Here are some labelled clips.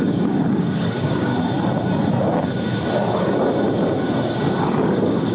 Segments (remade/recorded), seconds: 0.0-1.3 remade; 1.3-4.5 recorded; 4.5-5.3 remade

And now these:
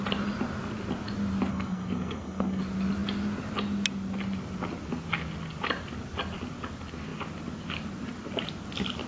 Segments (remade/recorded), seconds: 0.0-1.5 recorded; 1.5-2.6 remade; 2.6-9.1 recorded

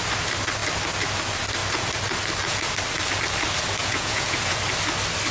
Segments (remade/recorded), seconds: 0.0-3.8 recorded; 3.8-4.6 remade; 4.6-5.3 recorded

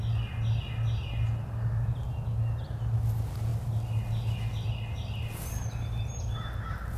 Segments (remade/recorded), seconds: 0.0-7.0 recorded

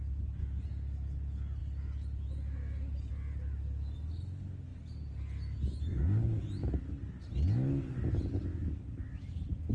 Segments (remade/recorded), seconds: 0.0-9.7 recorded